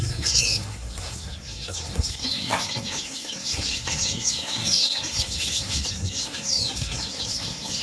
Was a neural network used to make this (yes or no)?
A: yes